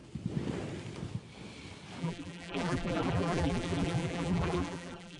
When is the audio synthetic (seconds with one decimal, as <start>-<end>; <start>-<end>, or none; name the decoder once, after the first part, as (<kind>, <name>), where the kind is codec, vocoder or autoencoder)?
2.0-5.2 (vocoder, BigVGAN v2)